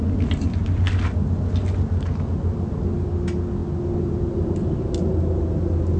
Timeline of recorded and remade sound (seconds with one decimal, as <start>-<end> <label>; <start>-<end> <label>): 0.0-6.0 recorded